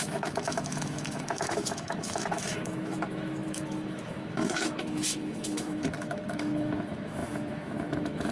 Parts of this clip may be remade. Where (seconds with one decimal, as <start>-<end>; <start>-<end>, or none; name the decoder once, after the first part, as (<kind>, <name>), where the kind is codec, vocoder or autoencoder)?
0.0-8.3 (autoencoder, DAC-VAE)